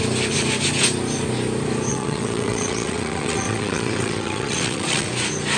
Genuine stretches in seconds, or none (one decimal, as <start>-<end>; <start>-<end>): 0.0-1.9; 5.1-5.6